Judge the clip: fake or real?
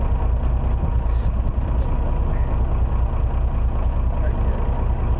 real